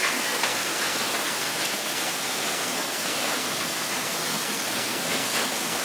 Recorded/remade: remade